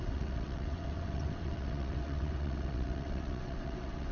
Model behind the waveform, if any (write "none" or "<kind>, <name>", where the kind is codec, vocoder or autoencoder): vocoder, WaveNeXt